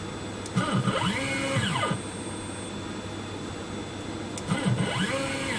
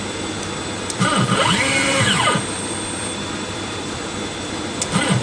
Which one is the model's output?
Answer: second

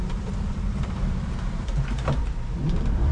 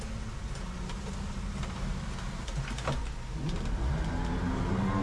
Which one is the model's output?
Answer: first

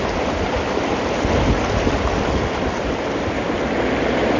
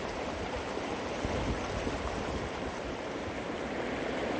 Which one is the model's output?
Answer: second